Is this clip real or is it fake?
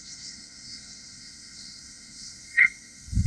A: fake